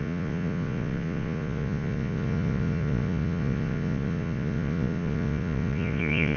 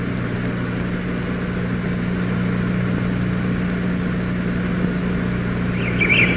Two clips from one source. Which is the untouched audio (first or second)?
second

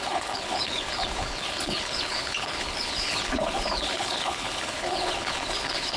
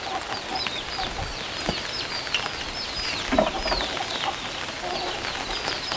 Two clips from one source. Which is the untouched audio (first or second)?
second